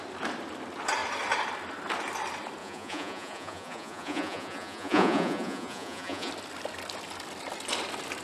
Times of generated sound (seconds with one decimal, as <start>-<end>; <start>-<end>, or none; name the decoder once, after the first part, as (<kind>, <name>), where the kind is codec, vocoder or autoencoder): 2.6-6.3 (vocoder, Vocos)